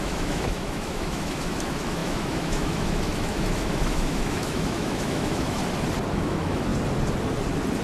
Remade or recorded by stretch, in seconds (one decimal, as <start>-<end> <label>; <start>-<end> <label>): 0.0-5.6 remade; 5.6-6.1 recorded; 6.1-6.7 remade; 6.7-7.8 recorded